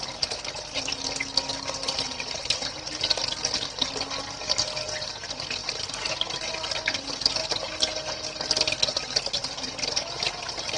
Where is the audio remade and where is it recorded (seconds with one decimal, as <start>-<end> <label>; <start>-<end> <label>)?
0.0-5.6 remade; 5.6-7.4 recorded; 7.4-9.4 remade; 9.4-10.1 recorded; 10.1-10.8 remade